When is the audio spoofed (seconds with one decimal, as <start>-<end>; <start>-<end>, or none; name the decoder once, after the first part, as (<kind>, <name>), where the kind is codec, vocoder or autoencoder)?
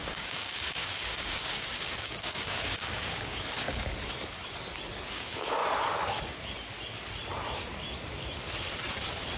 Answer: 0.0-3.9 (codec, DAC); 5.1-5.6